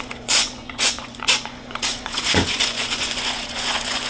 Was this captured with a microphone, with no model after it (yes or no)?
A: no